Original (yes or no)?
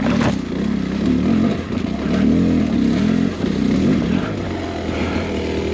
yes